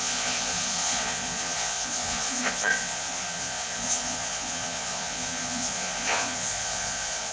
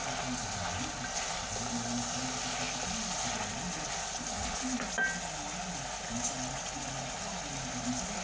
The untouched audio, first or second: second